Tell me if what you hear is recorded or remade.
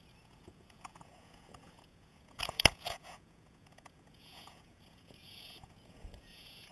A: remade